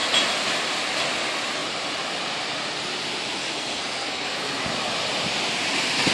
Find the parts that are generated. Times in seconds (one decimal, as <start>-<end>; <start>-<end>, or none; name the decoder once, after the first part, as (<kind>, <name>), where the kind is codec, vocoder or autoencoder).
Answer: 3.4-4.6 (codec, SNAC)